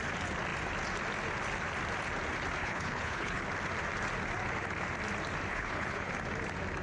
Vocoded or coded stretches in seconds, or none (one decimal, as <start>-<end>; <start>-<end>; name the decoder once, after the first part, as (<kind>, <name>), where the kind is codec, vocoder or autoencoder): 2.6-3.4 (codec, HILCodec); 5.5-6.1